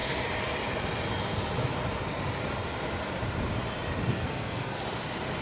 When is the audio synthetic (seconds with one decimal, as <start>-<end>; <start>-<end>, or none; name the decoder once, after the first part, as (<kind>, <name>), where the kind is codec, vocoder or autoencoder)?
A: 4.1-4.8 (codec, SNAC)